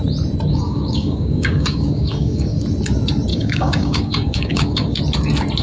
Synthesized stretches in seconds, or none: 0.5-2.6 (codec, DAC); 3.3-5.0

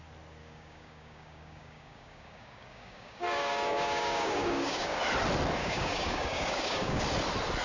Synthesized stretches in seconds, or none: 0.4-5.0 (codec, DAC); 5.6-7.0

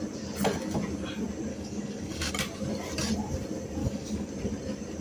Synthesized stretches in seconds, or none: 1.5-2.3 (codec, DAC); 3.8-4.3

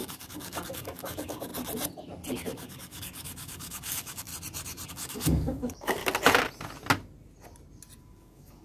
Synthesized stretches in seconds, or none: 0.0-1.5 (codec, DAC); 2.3-4.3; 4.9-6.0; 8.0-8.6

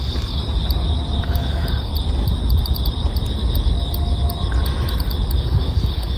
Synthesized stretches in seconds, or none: 0.0-0.4 (codec, DAC); 1.2-1.9; 5.4-6.2

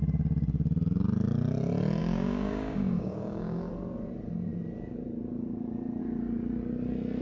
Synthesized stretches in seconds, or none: 2.0-3.7 (codec, DAC)

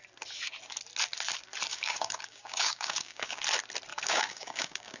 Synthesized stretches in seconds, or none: 1.7-3.4 (codec, DAC); 3.9-5.0